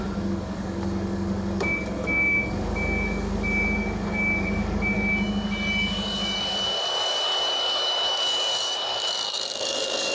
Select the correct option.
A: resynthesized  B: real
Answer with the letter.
A